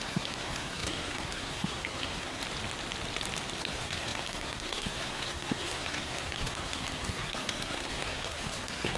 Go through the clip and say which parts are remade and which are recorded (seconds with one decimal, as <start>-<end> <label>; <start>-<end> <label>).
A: 0.0-2.4 remade; 2.4-3.6 recorded; 3.6-9.0 remade